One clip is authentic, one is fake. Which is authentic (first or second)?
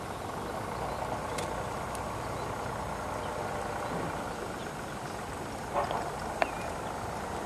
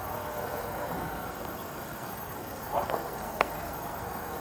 first